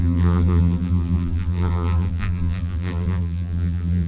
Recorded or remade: remade